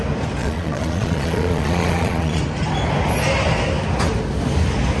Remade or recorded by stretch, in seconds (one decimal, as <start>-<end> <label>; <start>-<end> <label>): 0.0-0.4 recorded; 0.4-2.4 remade; 2.4-5.0 recorded